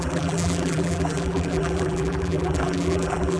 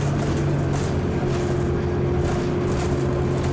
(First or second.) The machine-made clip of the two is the first